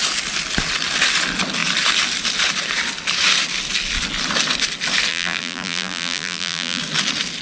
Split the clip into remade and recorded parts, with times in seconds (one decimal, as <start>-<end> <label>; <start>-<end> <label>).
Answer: 0.0-5.1 recorded; 5.1-6.8 remade; 6.8-7.4 recorded